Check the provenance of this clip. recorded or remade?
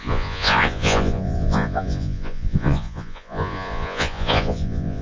remade